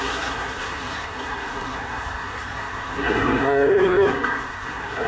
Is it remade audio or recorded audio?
remade